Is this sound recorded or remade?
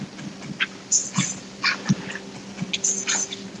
recorded